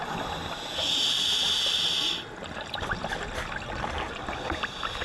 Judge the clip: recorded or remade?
recorded